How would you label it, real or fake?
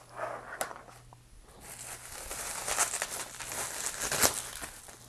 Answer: real